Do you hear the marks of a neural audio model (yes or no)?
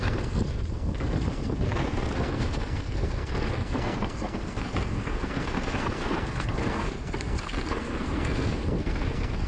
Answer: yes